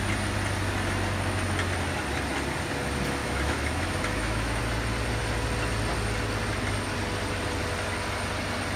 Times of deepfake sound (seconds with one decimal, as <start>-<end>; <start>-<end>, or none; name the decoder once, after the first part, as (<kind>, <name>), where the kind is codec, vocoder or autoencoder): 3.2-4.6 (autoencoder, DAC-VAE)